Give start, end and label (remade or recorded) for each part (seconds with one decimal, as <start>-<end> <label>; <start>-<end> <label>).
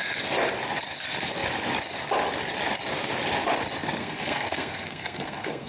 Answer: 0.0-4.0 recorded; 4.0-5.7 remade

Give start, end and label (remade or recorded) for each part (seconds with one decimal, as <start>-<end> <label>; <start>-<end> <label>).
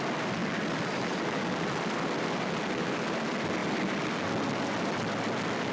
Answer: 0.0-5.7 recorded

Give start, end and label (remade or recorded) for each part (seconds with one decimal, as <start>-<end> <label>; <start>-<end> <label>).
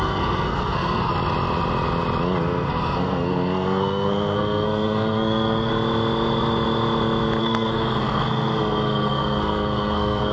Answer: 0.0-1.1 remade; 1.1-2.4 recorded; 2.4-5.7 remade; 5.7-7.4 recorded; 7.4-10.3 remade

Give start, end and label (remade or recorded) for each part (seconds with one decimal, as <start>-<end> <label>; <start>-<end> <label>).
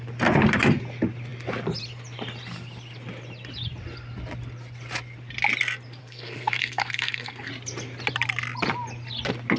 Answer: 0.0-6.0 recorded; 6.0-7.5 remade; 7.5-9.6 recorded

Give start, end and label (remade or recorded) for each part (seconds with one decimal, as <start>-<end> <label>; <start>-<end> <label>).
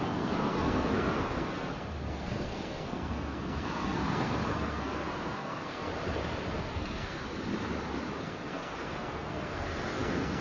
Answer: 0.0-5.9 remade; 5.9-6.5 recorded; 6.5-7.2 remade; 7.2-8.2 recorded; 8.2-10.4 remade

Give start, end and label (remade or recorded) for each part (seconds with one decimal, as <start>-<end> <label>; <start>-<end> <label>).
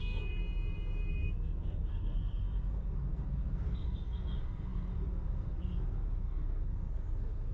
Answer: 0.0-0.4 remade; 0.4-1.1 recorded; 1.1-7.5 remade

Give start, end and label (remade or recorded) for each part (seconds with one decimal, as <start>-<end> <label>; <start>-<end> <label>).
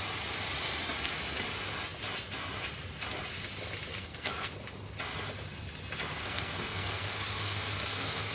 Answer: 0.0-3.9 recorded; 3.9-4.5 remade; 4.5-6.1 recorded; 6.1-8.3 remade